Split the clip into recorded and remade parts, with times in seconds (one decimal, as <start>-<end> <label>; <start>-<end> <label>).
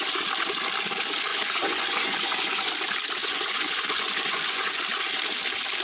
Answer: 0.0-1.3 recorded; 1.3-2.7 remade; 2.7-3.2 recorded; 3.2-4.8 remade; 4.8-5.8 recorded